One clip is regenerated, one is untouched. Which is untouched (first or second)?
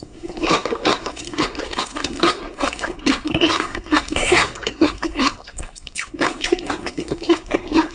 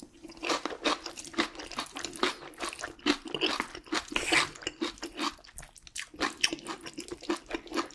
second